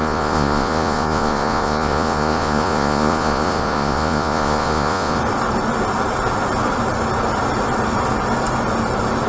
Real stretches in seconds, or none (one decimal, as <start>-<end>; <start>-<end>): 5.2-9.3